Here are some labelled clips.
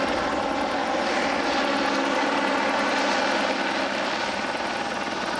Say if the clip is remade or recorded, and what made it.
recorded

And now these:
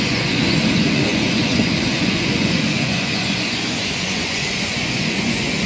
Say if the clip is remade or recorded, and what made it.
remade, vocoder, Vocos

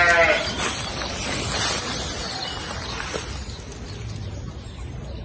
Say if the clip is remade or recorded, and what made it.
recorded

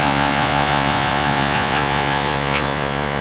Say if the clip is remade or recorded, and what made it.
remade, vocoder, Vocos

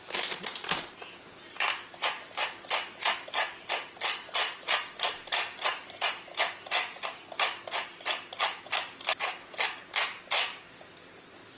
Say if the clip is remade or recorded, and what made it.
recorded